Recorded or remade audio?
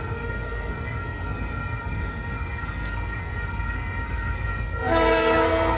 remade